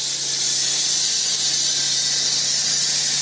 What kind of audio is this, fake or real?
real